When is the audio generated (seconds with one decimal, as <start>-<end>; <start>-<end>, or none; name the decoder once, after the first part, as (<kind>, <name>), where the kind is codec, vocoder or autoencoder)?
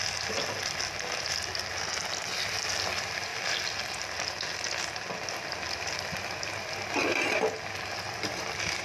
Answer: none